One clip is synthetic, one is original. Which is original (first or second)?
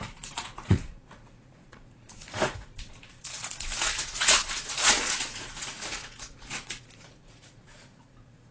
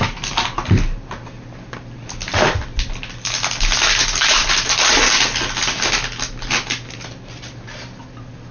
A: second